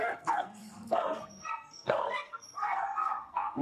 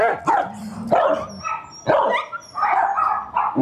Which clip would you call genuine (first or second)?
second